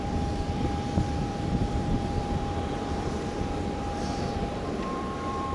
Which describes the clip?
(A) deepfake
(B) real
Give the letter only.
A